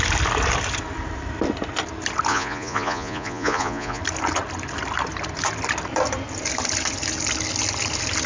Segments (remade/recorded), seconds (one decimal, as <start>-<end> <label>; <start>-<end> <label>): 0.0-2.3 recorded; 2.3-4.0 remade; 4.0-8.3 recorded